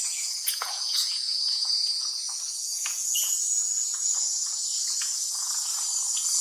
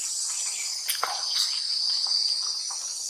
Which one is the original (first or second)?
second